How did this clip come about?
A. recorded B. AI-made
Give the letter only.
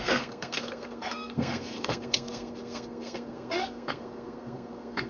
B